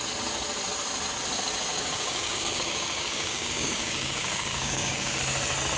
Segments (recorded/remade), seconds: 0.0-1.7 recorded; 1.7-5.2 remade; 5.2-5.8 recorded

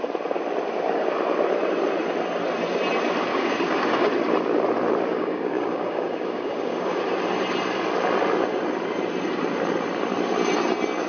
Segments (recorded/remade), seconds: 0.0-3.3 recorded; 3.3-4.1 remade; 4.1-5.1 recorded; 5.1-7.0 remade; 7.0-11.1 recorded

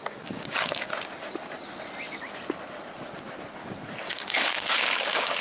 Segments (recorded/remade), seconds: 0.0-0.9 remade; 0.9-4.1 recorded; 4.1-5.4 remade

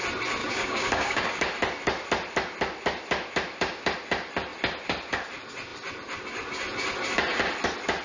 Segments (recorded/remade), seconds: 0.0-0.4 recorded; 0.4-1.5 remade; 1.5-8.0 recorded

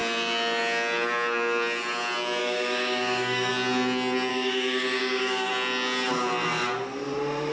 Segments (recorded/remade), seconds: 0.0-2.4 recorded; 2.4-3.5 remade; 3.5-4.3 recorded; 4.3-5.5 remade; 5.5-7.5 recorded

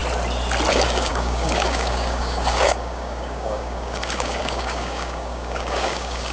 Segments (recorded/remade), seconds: 0.0-0.7 recorded; 0.7-6.3 remade